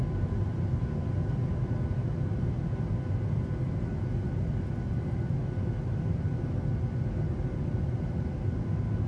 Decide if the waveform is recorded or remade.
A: recorded